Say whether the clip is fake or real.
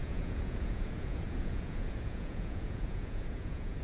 fake